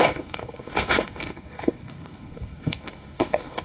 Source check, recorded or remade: remade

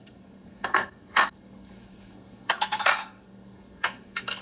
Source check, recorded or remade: remade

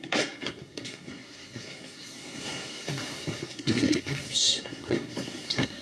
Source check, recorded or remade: remade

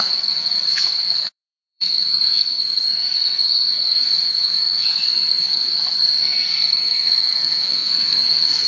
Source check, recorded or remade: remade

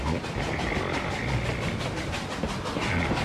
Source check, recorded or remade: recorded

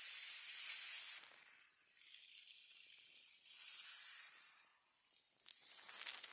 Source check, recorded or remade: recorded